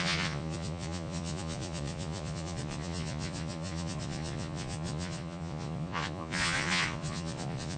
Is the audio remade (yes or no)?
yes